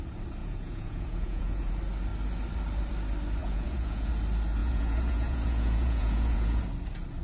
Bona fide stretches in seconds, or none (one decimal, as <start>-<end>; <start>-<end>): 0.0-0.4; 1.7-3.4; 4.1-4.6; 6.6-7.2